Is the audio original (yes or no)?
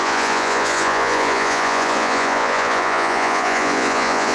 no